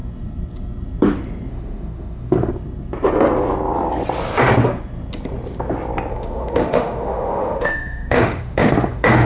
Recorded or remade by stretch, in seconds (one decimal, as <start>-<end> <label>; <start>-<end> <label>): 0.0-1.5 recorded; 1.5-2.5 remade; 2.5-6.1 recorded; 6.1-9.3 remade